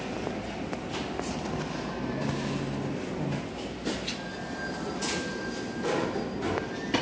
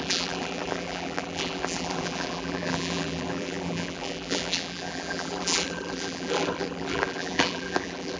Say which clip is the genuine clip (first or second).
first